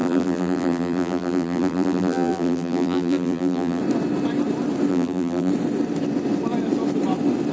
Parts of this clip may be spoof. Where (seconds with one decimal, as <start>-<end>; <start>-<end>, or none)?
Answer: 0.0-3.8; 4.9-5.5